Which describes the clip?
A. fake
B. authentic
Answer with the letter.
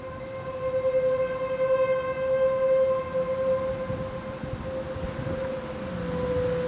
B